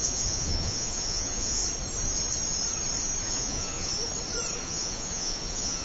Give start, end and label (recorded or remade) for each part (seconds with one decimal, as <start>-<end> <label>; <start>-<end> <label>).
0.0-1.6 remade; 1.6-3.2 recorded; 3.2-3.9 remade; 3.9-4.6 recorded; 4.6-5.8 remade